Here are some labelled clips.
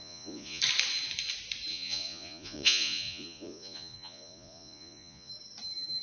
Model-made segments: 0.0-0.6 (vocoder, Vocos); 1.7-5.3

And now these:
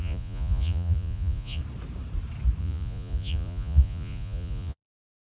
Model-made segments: 0.0-1.6 (vocoder, Vocos); 2.6-5.2

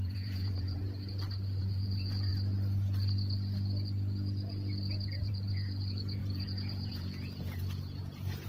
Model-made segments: 0.0-0.8 (vocoder, Vocos); 1.6-2.3; 5.3-8.5

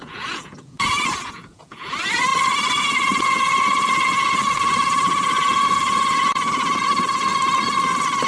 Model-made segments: 0.0-2.3 (vocoder, Vocos); 2.8-7.3

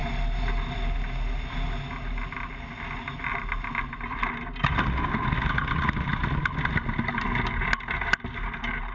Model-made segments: none

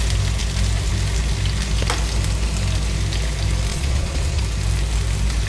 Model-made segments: 3.7-4.4 (vocoder, Vocos)

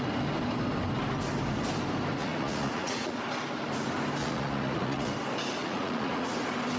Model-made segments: 2.2-3.2 (vocoder, Vocos); 4.2-5.1; 5.6-6.3

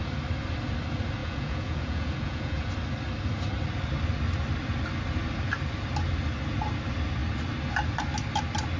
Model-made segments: 1.2-2.7 (vocoder, Vocos)